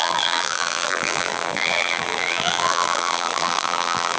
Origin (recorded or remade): remade